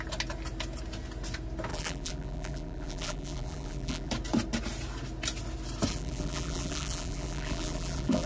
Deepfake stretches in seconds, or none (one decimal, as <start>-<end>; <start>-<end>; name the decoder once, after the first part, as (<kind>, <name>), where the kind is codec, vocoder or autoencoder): 1.7-4.1 (vocoder, BigVGAN v2); 5.9-8.3